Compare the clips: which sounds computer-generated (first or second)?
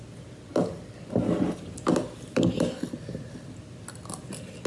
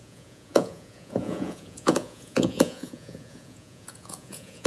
second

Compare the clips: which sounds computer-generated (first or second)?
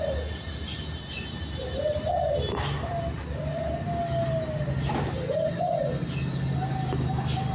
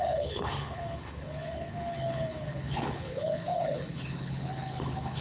second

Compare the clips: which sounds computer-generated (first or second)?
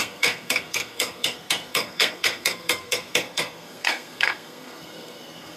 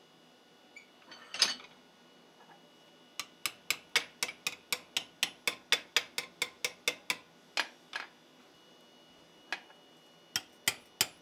first